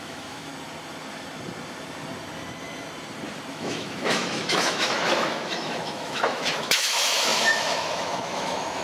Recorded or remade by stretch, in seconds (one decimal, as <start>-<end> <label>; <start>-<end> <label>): 0.0-0.5 remade; 0.5-3.5 recorded; 3.5-8.8 remade